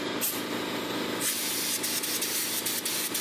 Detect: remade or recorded recorded